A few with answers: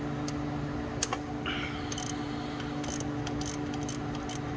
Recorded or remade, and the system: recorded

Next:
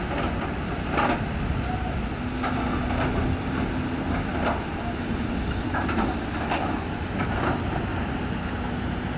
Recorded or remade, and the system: recorded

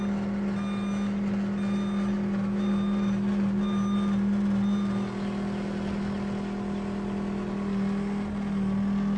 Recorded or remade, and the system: recorded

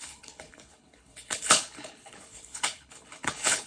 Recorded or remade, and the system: remade, codec, HILCodec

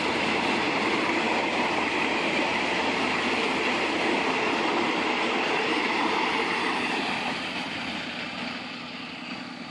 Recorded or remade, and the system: recorded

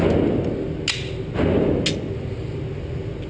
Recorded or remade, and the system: recorded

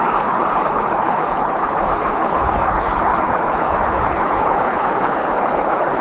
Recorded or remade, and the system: remade, codec, HILCodec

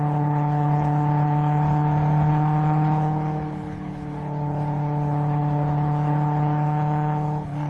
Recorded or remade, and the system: remade, codec, HILCodec